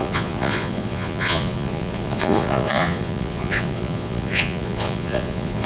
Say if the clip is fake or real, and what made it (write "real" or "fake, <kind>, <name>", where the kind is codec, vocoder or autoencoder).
fake, vocoder, Vocos